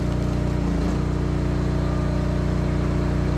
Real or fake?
real